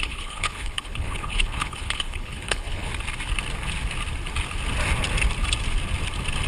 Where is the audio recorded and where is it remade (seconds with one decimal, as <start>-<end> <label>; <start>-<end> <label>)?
0.0-2.9 remade; 2.9-6.5 recorded